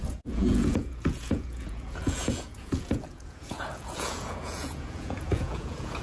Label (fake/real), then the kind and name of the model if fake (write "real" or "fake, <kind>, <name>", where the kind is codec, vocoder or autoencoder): fake, vocoder, Vocos